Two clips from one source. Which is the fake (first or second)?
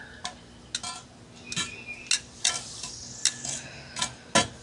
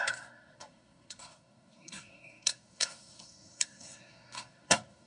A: second